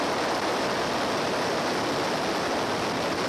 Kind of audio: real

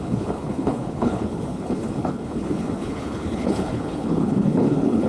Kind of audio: fake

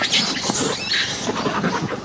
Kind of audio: real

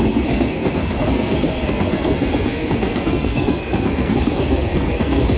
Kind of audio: fake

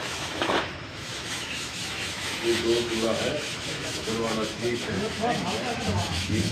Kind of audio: fake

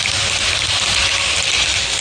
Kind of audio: real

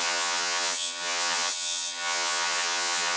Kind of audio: fake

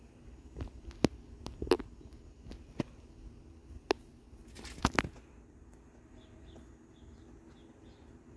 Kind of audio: real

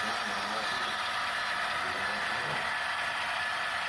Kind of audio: real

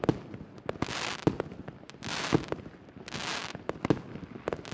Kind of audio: real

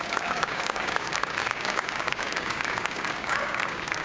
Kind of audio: fake